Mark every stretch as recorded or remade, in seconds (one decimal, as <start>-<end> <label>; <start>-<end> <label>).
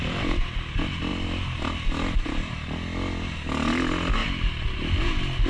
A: 0.0-5.5 recorded